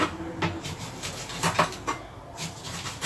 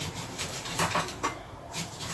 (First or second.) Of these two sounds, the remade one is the second